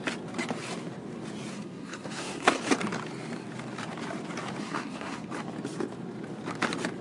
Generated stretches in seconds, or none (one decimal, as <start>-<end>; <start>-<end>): 1.5-2.6; 4.6-5.3